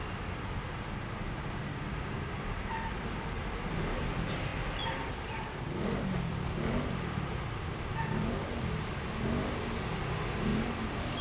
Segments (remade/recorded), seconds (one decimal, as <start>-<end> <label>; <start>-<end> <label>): 0.0-1.7 recorded; 1.7-2.3 remade; 2.3-11.2 recorded